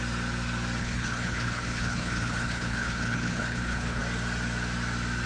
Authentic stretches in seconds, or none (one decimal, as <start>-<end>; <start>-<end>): 0.0-0.8; 4.0-5.3